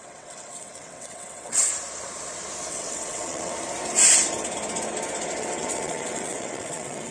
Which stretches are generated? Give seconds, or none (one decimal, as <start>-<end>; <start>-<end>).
0.0-1.7; 2.7-3.5; 5.4-7.1